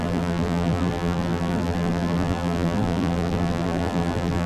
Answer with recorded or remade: remade